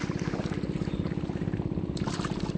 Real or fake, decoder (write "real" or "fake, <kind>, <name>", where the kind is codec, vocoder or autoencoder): real